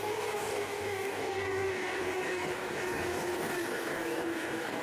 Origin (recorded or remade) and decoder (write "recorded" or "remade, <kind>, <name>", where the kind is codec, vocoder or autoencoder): remade, codec, DAC